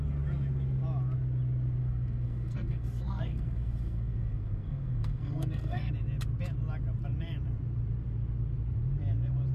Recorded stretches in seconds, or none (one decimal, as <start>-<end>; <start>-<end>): 0.0-1.8; 5.9-9.5

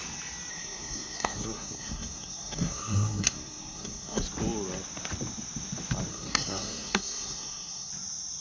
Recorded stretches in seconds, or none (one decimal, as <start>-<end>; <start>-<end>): 0.0-0.5; 4.2-6.1; 7.9-8.4

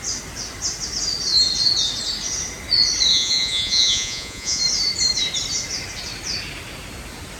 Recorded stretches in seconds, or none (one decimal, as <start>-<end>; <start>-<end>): 0.0-3.1; 4.6-7.4